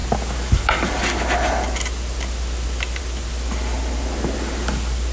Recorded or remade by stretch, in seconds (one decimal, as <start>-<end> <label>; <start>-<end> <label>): 0.0-5.1 recorded

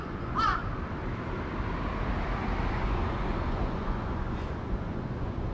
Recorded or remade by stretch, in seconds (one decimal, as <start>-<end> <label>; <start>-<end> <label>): 0.0-0.6 remade; 0.6-2.7 recorded; 2.7-5.5 remade